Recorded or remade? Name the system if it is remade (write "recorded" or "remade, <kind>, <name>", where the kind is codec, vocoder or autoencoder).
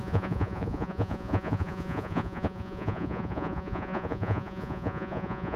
remade, vocoder, Vocos